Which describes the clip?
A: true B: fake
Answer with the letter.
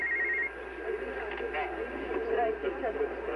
A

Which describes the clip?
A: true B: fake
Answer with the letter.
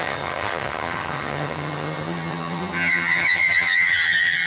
B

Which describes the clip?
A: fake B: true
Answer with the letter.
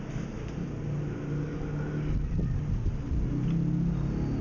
B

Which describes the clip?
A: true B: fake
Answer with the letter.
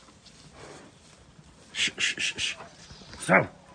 A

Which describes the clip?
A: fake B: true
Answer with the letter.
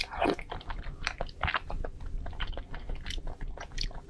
B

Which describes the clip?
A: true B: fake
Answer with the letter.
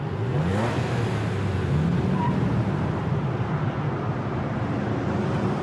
A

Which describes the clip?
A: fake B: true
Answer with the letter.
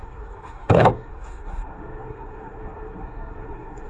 A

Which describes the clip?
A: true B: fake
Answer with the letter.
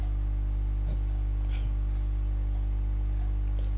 A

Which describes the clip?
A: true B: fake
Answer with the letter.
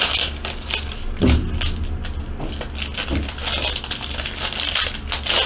A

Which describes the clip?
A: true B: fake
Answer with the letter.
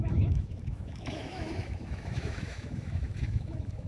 B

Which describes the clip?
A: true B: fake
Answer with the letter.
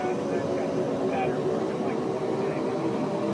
A